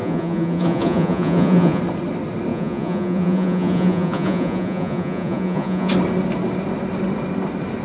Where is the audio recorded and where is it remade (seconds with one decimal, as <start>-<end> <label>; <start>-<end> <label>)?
0.0-1.8 remade; 1.8-2.5 recorded; 2.5-5.9 remade; 5.9-7.8 recorded